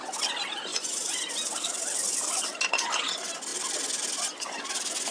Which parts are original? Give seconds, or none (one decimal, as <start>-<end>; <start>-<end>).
0.0-0.7; 1.3-5.1